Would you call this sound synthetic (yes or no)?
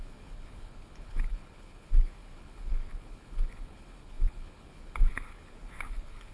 yes